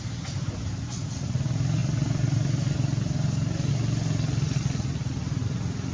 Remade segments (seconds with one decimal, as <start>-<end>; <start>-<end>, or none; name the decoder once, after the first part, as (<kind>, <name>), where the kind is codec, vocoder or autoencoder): none